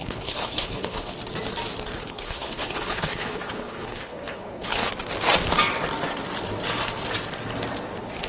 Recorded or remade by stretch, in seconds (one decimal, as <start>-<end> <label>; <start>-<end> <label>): 0.0-1.1 remade; 1.1-1.9 recorded; 1.9-4.9 remade; 4.9-8.3 recorded